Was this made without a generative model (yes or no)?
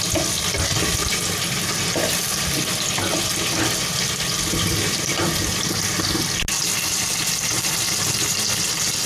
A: yes